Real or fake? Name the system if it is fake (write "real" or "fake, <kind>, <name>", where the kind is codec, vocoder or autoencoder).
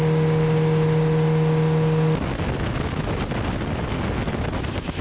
real